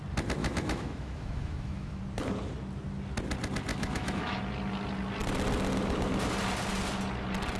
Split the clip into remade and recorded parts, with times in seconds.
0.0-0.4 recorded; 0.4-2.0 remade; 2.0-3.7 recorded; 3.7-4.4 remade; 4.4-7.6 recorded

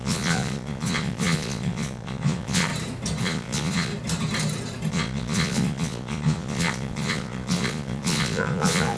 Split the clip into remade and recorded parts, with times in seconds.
0.0-2.7 remade; 2.7-3.2 recorded; 3.2-3.9 remade; 3.9-4.9 recorded; 4.9-9.0 remade

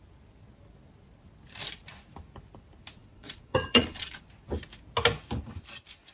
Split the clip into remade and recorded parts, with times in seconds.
0.0-3.0 recorded; 3.0-4.2 remade; 4.2-6.1 recorded